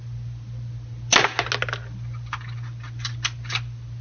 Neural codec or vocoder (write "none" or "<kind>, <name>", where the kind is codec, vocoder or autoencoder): none